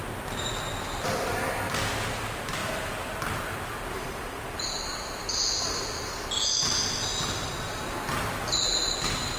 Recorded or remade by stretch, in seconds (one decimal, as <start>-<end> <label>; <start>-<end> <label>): 0.0-9.4 recorded